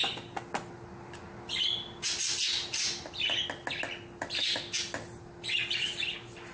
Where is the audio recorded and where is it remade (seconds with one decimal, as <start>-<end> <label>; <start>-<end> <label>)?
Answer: 0.0-6.5 recorded